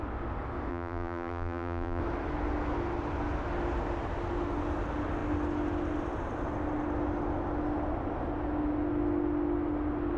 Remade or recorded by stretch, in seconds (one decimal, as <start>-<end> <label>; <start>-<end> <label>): 0.0-0.7 recorded; 0.7-2.0 remade; 2.0-10.2 recorded